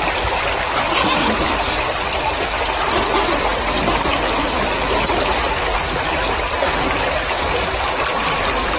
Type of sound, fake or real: real